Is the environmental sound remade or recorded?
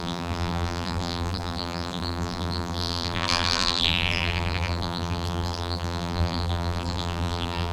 remade